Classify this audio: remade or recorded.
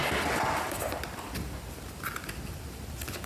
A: recorded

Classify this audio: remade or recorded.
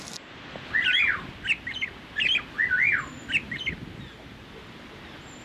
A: recorded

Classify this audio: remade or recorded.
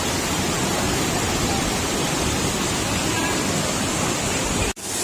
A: recorded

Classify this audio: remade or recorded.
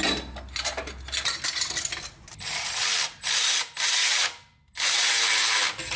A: recorded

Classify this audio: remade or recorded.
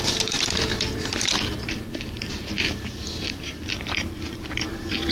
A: remade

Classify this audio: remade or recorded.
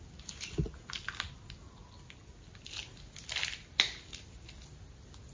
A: recorded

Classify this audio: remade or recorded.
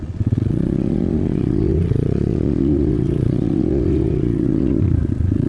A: remade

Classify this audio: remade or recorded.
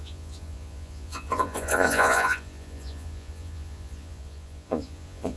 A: remade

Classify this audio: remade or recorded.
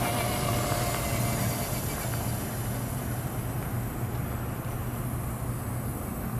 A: recorded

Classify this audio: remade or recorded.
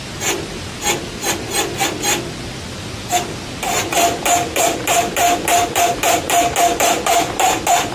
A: recorded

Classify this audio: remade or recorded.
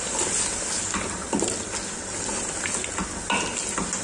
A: recorded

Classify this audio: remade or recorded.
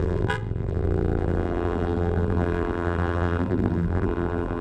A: remade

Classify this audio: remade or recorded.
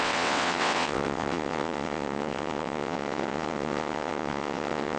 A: remade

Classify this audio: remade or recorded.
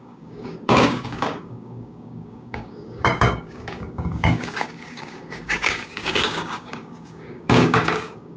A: remade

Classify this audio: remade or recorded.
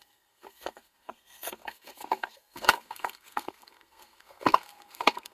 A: remade